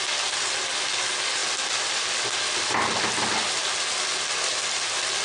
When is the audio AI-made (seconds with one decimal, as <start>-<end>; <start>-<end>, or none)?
none